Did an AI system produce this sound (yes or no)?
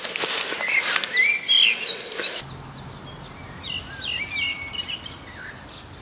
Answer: no